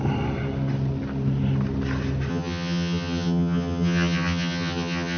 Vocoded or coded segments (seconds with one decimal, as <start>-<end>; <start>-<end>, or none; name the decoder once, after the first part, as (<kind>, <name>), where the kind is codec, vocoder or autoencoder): 2.3-5.2 (vocoder, HiFi-GAN)